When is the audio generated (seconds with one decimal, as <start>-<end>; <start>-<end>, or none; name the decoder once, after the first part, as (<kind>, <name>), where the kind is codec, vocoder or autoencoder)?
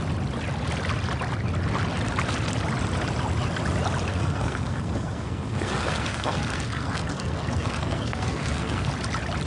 4.1-8.9 (codec, SNAC)